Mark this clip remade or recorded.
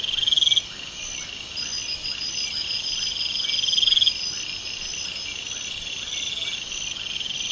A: recorded